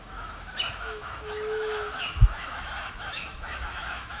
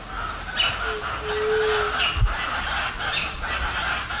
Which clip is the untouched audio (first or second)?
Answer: second